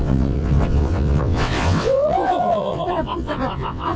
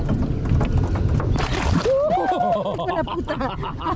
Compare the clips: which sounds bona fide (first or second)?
second